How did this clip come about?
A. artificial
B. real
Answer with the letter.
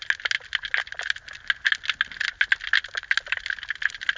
B